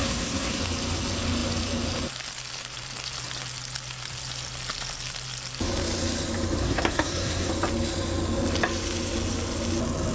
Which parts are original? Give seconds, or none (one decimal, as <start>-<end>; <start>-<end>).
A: 0.6-6.6; 7.5-10.1